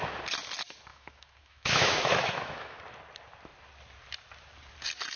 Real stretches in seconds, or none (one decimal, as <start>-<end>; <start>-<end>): 0.0-0.9; 2.8-5.2